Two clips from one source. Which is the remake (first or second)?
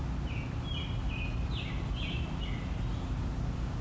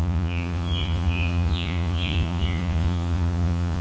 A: second